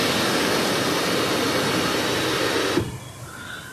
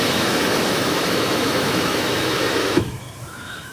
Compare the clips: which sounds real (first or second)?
first